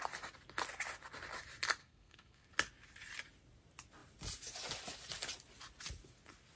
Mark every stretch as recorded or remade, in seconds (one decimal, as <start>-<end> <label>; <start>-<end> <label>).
0.0-1.8 recorded; 1.8-2.5 remade; 2.5-6.6 recorded